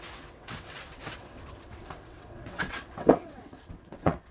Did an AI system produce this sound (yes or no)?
yes